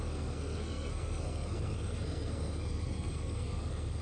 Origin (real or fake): fake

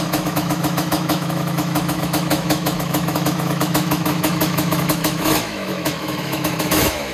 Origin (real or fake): fake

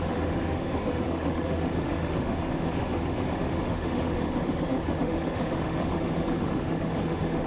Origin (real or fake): fake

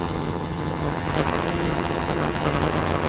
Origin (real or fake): fake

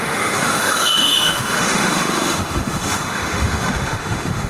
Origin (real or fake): fake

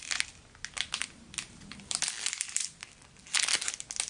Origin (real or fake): real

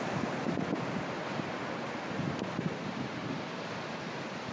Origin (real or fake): fake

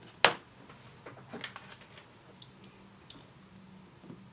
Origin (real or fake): real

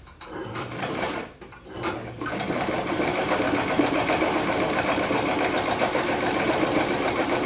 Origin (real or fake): fake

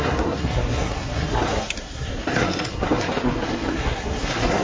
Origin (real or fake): fake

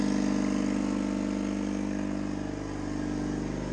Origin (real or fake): real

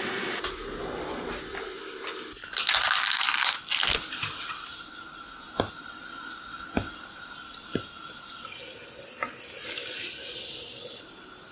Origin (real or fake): real